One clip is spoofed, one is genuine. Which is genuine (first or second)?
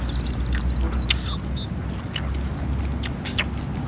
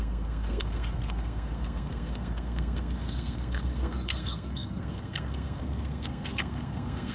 first